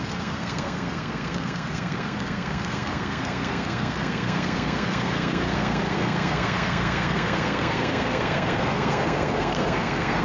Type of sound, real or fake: fake